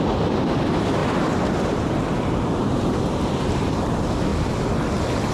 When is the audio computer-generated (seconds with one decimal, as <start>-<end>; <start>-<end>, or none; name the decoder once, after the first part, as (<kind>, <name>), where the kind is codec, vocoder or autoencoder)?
0.0-4.3 (vocoder, BigVGAN v2)